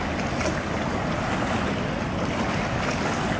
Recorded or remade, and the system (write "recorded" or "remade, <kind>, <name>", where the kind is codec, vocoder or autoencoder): recorded